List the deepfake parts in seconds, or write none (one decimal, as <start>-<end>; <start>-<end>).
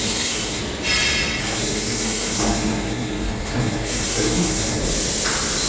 0.0-0.6; 1.4-4.8